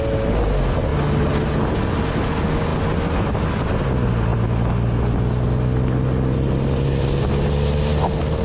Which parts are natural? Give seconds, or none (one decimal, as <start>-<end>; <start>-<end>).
0.0-8.4